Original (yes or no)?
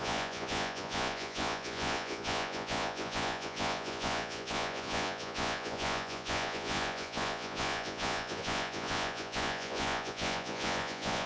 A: no